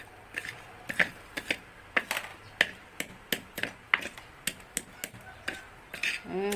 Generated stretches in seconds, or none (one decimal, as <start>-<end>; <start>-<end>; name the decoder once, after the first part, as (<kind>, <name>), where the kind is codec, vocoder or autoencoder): none